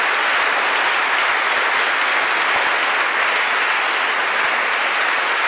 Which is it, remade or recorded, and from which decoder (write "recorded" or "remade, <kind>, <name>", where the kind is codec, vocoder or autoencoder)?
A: recorded